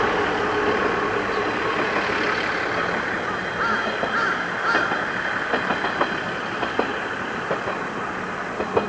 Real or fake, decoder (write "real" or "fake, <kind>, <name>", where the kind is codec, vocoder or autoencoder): real